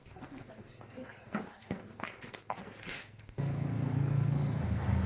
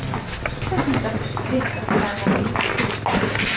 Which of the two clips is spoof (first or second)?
first